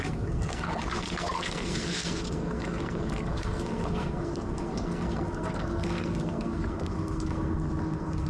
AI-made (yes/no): yes